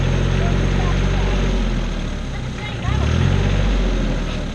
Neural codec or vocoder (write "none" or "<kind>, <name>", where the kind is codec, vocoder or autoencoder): none